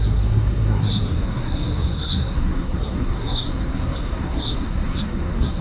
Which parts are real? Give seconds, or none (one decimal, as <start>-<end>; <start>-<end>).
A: none